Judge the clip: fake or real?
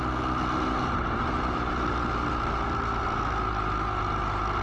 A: real